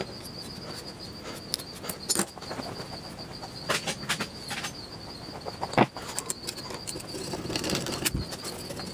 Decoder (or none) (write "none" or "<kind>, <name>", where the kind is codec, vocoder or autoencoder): none